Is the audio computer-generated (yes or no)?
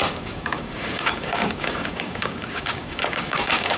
yes